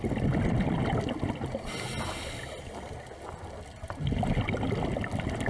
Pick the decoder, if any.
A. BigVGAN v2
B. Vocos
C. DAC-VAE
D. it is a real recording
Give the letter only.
D